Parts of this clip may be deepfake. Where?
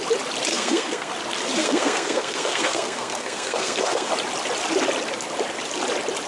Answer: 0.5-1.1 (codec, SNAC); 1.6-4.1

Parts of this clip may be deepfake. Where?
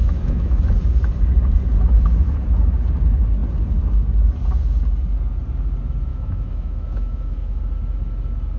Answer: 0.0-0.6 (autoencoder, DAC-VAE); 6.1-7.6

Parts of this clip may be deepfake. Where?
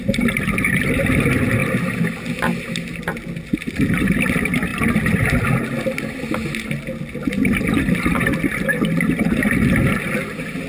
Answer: none